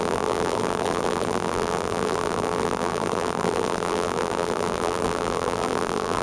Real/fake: fake